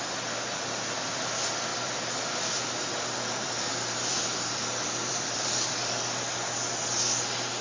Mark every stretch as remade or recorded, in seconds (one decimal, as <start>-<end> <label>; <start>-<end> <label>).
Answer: 0.0-1.7 recorded; 1.7-6.2 remade; 6.2-7.6 recorded